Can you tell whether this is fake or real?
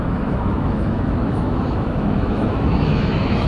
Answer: fake